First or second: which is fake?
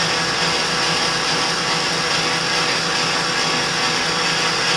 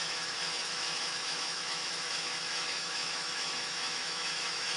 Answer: second